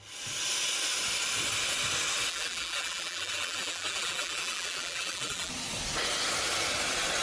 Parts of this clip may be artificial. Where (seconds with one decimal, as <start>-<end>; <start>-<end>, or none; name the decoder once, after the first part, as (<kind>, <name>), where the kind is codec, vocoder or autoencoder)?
2.3-5.5 (vocoder, BigVGAN v2)